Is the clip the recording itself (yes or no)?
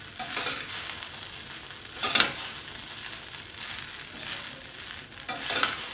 yes